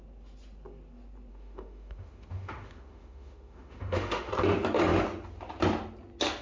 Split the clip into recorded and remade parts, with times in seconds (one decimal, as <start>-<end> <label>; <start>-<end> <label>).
0.0-1.3 recorded; 1.3-4.3 remade; 4.3-6.4 recorded